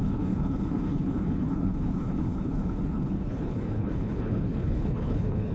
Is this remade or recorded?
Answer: remade